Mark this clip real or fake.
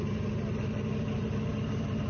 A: real